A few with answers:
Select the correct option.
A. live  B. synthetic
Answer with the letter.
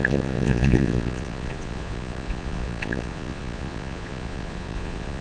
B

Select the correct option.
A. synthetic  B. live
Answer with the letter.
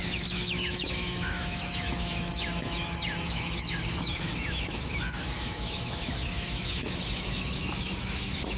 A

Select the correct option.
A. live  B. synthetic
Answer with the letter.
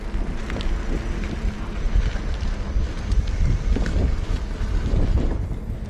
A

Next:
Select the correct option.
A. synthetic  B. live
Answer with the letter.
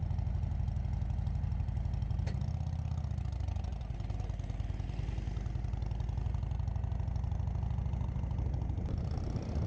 B